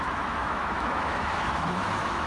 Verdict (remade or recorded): remade